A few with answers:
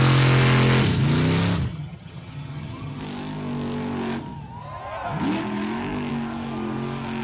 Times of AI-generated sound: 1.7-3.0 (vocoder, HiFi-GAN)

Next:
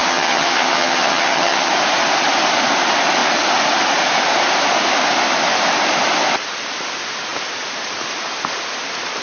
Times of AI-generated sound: 0.0-1.7 (vocoder, HiFi-GAN)

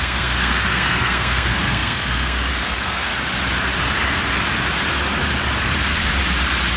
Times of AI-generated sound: 0.0-3.1 (codec, SNAC)

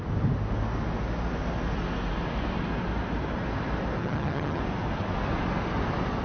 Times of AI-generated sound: 4.0-4.6 (vocoder, HiFi-GAN)